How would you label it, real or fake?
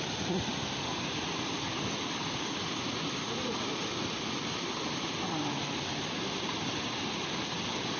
real